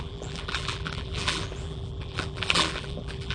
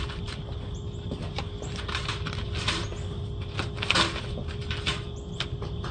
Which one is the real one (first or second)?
second